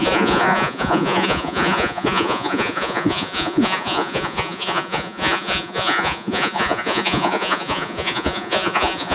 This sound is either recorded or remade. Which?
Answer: remade